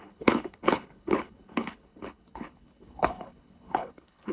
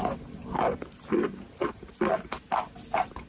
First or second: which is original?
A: second